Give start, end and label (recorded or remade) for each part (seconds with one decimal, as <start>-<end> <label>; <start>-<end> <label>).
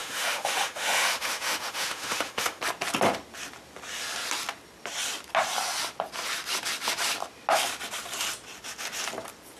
0.0-2.6 remade; 2.6-9.6 recorded